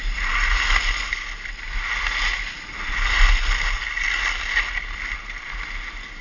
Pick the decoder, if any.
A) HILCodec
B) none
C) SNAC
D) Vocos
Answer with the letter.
B